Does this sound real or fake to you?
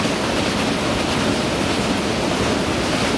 real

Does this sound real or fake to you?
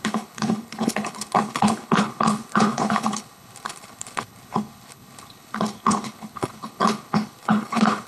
fake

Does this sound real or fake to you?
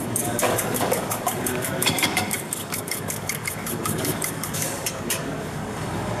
fake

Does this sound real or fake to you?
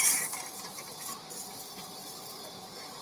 fake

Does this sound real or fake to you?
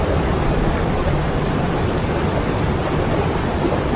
real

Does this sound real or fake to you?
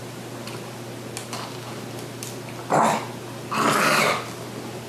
real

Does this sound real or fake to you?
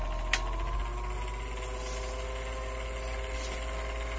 real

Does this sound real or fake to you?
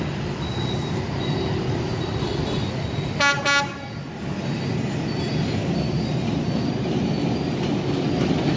real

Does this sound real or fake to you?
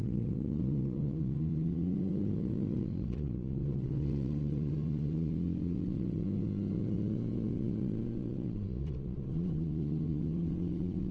fake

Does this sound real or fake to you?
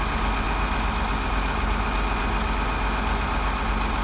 real